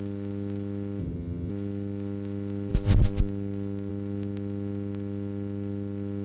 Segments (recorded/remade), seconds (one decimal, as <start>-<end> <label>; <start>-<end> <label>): 0.0-1.0 recorded; 1.0-1.5 remade; 1.5-6.2 recorded